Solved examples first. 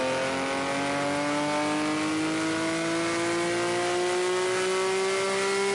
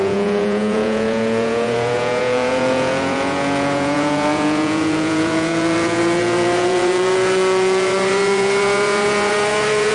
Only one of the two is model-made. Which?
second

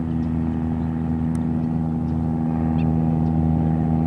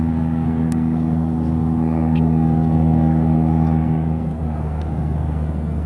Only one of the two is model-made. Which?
second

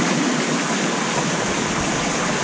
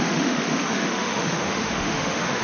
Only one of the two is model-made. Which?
second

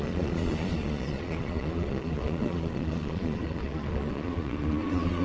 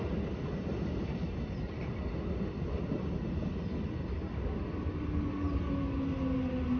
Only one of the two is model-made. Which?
first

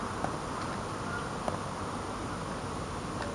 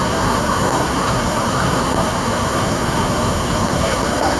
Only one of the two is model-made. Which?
second